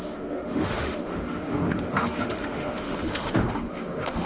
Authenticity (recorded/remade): remade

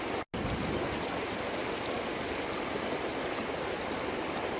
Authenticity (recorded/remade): recorded